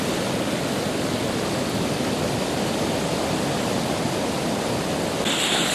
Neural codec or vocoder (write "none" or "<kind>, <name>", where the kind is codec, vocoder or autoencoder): none